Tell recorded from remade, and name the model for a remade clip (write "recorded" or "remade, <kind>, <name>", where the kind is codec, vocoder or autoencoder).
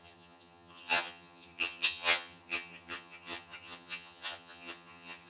remade, vocoder, HiFi-GAN